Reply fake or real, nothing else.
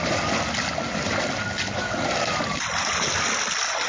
real